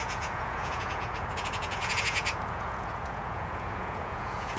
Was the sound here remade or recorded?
remade